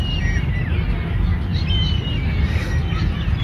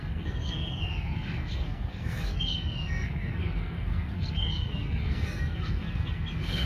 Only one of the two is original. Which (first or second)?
first